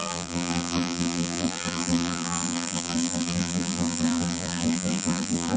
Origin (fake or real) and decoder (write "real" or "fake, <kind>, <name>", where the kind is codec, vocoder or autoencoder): fake, vocoder, BigVGAN v2